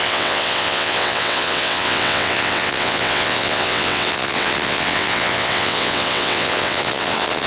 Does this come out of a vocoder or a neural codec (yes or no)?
yes